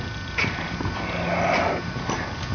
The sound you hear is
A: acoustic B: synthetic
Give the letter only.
A